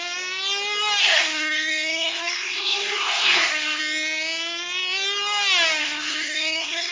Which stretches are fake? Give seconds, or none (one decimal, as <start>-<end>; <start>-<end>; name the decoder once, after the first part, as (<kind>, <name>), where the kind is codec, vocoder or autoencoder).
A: 1.0-3.8 (codec, SNAC); 5.8-6.9